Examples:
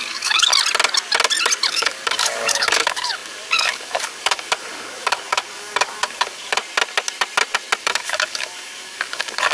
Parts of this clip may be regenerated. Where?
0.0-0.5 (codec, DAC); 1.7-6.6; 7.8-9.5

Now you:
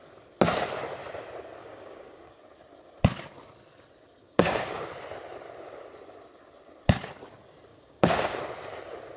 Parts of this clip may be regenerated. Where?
1.6-2.4 (codec, DAC); 4.2-4.9; 7.7-8.4

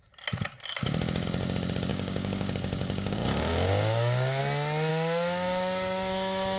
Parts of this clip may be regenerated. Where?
1.9-4.4 (codec, DAC); 4.9-6.6

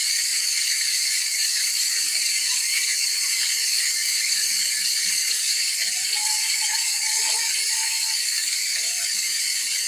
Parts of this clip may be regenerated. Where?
0.0-9.9 (codec, DAC)

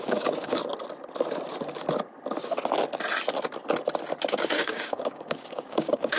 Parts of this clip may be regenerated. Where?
0.0-0.6 (codec, DAC); 4.3-6.2

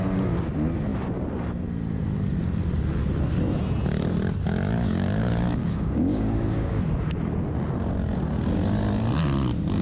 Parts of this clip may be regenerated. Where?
5.2-6.8 (codec, DAC)